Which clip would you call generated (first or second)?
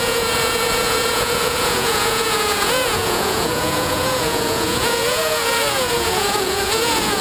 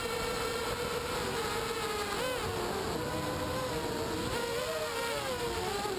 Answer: first